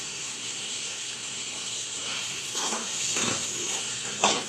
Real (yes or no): no